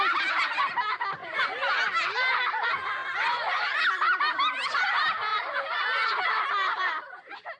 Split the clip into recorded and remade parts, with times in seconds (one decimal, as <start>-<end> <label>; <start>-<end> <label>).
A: 0.0-5.3 recorded; 5.3-6.9 remade; 6.9-7.6 recorded